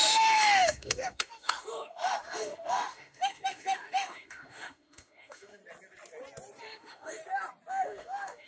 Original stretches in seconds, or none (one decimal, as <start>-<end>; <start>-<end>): 5.6-6.6; 7.2-7.7